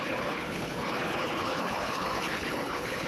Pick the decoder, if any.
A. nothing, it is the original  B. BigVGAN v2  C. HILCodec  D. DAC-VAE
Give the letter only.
C